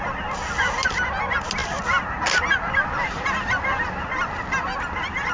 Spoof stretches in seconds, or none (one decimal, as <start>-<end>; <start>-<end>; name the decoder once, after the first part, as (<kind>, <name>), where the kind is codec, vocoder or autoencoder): none